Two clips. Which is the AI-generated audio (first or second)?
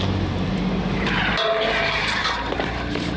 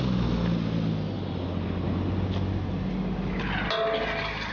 first